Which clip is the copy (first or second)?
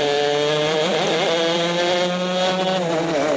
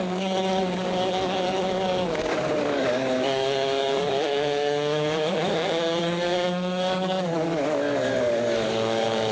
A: second